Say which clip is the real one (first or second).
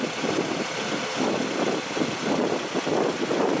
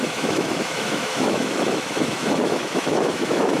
first